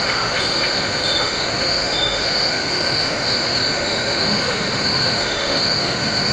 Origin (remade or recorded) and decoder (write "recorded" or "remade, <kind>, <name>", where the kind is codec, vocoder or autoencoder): remade, autoencoder, DAC-VAE